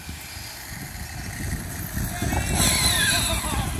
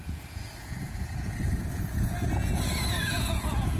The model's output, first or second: second